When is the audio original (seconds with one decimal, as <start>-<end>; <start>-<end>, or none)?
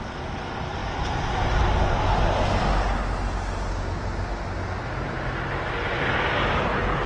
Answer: 0.0-7.1